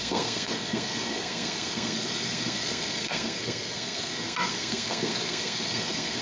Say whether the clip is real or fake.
fake